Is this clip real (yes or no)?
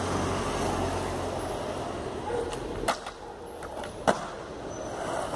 yes